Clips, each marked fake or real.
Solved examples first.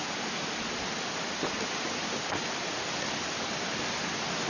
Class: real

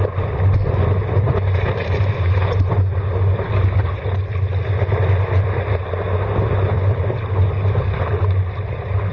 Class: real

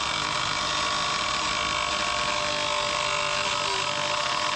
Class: real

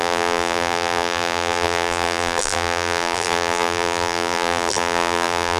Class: fake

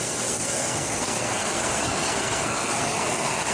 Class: fake